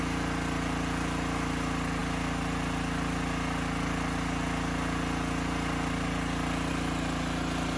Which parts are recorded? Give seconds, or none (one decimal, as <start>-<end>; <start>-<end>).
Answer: 0.0-7.8